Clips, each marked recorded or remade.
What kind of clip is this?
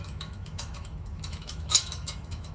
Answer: remade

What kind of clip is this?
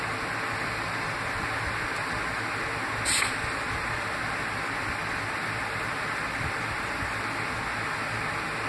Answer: recorded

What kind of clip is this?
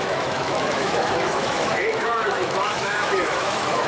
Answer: remade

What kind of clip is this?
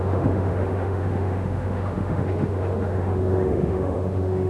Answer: remade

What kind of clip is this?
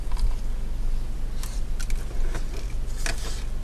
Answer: recorded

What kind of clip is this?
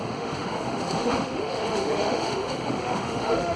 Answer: remade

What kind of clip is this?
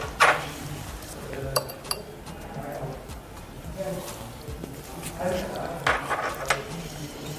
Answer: recorded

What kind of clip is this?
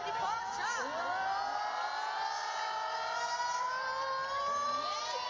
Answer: recorded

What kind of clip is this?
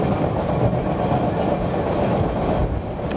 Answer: recorded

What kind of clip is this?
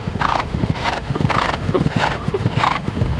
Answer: remade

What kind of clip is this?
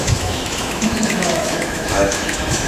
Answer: remade